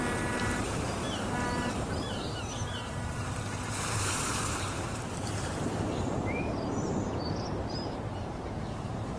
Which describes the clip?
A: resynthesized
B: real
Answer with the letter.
A